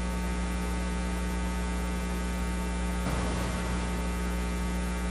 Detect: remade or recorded recorded